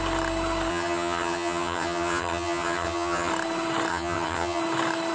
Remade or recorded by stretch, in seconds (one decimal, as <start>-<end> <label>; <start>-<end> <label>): 0.0-0.7 recorded; 0.7-3.3 remade; 3.3-3.9 recorded; 3.9-4.6 remade; 4.6-5.1 recorded